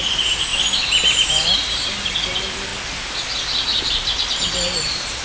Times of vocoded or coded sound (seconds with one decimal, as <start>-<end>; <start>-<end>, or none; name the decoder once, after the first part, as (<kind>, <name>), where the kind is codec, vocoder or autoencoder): 0.0-0.5 (vocoder, BigVGAN v2); 1.2-2.7; 3.8-5.2